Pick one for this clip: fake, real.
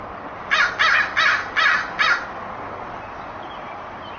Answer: real